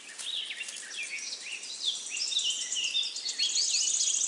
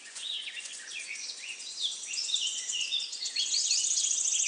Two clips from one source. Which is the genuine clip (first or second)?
first